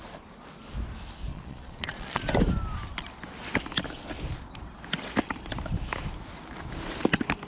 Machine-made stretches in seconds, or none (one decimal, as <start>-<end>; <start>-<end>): 1.3-2.2

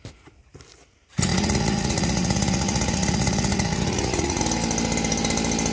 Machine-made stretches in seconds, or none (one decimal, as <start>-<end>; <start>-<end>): 1.3-4.4

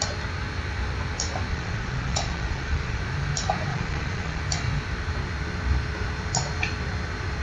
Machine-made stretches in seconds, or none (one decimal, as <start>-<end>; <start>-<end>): 1.5-3.0; 3.7-4.4